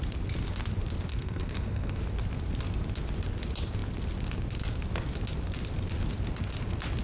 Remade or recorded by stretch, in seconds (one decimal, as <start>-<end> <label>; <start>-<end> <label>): 0.0-1.1 recorded; 1.1-2.0 remade; 2.0-7.0 recorded